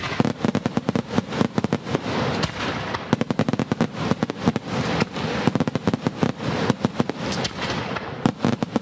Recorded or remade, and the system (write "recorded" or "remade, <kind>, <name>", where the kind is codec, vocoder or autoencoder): recorded